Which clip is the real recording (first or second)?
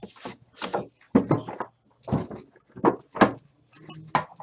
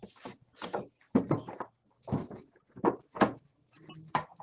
first